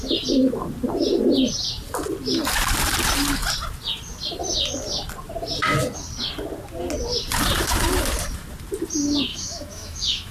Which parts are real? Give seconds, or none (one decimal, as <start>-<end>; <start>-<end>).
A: 0.0-9.3